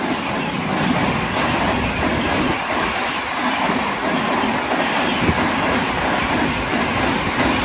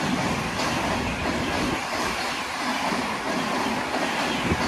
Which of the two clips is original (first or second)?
second